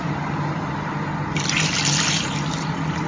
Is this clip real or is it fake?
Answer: real